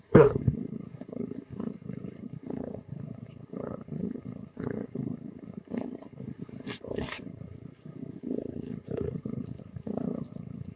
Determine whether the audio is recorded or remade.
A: remade